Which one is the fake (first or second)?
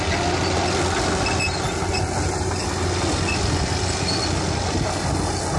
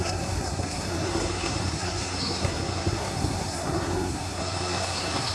second